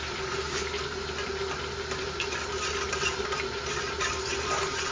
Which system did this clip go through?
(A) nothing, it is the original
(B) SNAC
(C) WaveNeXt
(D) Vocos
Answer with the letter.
A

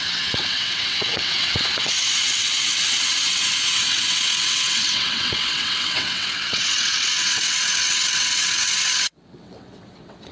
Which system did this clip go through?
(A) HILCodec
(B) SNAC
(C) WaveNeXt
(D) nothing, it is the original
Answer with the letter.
C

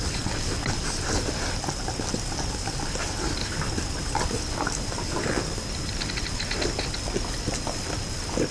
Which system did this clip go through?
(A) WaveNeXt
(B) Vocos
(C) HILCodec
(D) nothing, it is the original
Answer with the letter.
D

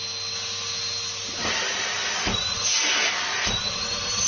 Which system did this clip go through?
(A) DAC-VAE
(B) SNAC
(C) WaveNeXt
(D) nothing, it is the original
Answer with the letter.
D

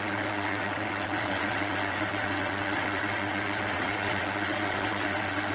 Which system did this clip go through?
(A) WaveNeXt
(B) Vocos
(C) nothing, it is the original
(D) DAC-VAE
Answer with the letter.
A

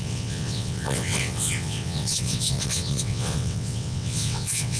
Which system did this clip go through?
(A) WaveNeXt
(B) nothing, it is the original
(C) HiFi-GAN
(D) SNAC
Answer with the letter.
A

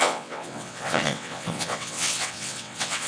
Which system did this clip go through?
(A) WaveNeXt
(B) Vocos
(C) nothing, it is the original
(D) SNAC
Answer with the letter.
A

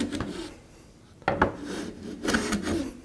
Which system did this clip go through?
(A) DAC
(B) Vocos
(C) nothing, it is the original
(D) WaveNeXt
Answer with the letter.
C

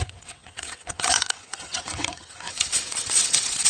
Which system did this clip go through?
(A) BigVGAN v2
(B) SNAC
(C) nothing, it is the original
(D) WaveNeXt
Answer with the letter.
D